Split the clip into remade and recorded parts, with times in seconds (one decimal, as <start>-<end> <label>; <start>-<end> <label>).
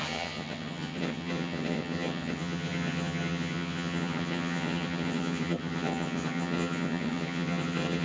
0.0-8.0 remade